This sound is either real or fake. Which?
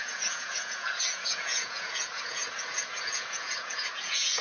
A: fake